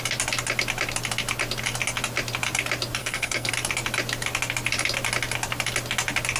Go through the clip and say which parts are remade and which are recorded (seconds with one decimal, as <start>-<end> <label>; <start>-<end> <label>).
0.0-3.0 recorded; 3.0-3.5 remade; 3.5-6.4 recorded